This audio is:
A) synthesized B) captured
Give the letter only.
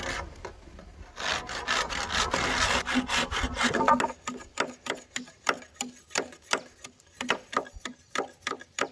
B